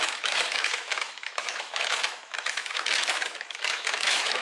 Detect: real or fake fake